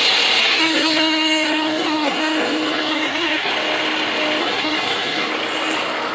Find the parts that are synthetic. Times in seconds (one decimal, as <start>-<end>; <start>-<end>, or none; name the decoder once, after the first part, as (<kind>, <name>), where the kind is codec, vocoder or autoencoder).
0.4-3.5 (codec, SNAC); 4.4-5.3